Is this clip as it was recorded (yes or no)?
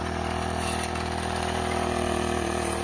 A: yes